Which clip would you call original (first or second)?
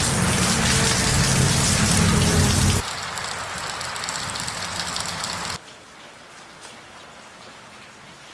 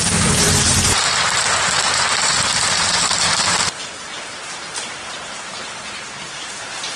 first